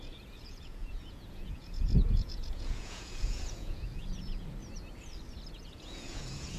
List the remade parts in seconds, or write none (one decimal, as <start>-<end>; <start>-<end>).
0.0-4.6; 5.5-6.6